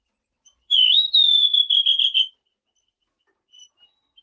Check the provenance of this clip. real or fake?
real